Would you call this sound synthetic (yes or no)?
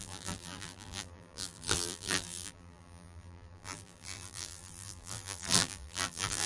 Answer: yes